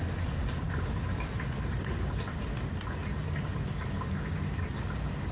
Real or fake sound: real